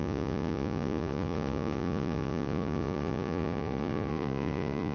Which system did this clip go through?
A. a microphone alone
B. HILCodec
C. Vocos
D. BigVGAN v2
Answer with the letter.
C